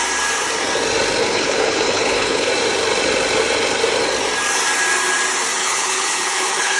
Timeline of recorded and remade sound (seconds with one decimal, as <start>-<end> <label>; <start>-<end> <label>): 0.0-1.2 recorded; 1.2-2.5 remade; 2.5-5.6 recorded; 5.6-6.8 remade